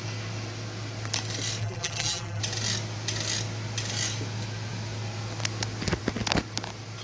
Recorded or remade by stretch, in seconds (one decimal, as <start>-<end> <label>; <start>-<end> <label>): 0.0-1.6 recorded; 1.6-2.4 remade; 2.4-7.0 recorded